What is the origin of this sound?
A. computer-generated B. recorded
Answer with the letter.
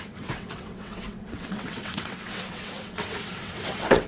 A